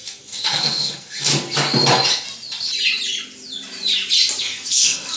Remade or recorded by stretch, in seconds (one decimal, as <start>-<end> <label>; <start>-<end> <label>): 0.0-1.3 remade; 1.3-4.4 recorded; 4.4-5.2 remade